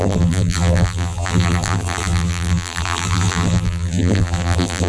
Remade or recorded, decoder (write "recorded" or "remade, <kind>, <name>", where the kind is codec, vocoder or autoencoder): remade, vocoder, BigVGAN v2